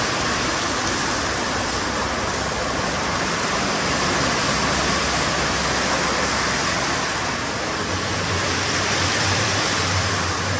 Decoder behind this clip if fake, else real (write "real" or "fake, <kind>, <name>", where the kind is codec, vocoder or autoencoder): real